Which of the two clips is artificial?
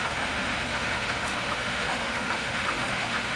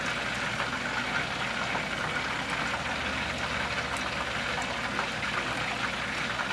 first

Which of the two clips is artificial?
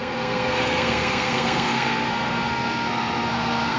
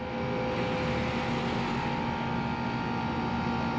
first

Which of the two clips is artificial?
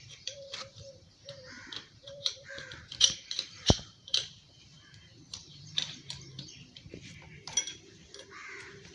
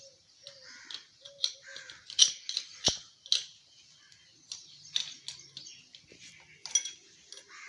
first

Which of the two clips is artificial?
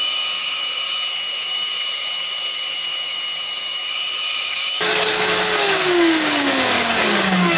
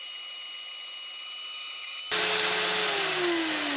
first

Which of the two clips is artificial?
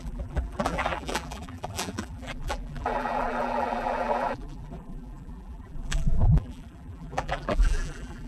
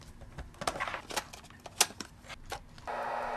first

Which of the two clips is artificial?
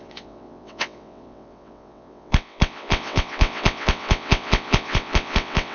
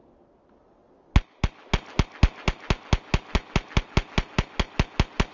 first